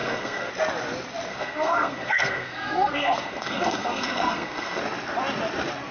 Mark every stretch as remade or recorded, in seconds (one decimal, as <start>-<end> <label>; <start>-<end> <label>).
0.0-0.5 remade; 0.5-1.3 recorded; 1.3-4.8 remade; 4.8-5.9 recorded